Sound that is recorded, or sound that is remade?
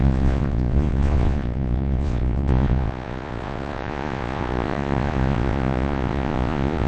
remade